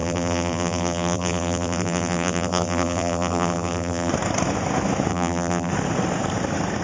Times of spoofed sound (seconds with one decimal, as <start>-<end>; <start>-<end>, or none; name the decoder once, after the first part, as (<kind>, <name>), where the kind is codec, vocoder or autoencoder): 0.0-4.1 (vocoder, BigVGAN v2); 5.1-5.7

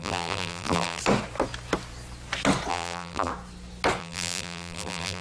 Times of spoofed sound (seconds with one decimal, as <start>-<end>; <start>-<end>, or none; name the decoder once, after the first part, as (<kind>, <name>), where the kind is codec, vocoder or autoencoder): 0.0-1.0 (vocoder, BigVGAN v2); 2.7-3.3; 4.0-5.2

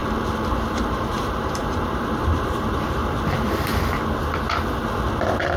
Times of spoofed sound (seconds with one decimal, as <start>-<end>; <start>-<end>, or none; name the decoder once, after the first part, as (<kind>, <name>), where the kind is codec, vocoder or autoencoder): 0.7-3.0 (vocoder, BigVGAN v2)

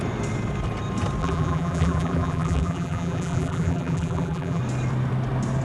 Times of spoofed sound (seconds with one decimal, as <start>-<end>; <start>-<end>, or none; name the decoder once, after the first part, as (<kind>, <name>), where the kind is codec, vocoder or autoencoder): 1.2-4.6 (vocoder, BigVGAN v2)